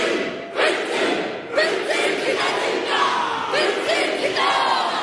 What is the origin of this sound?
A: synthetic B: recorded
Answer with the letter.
B